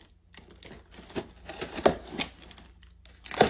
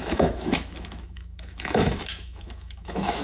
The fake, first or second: second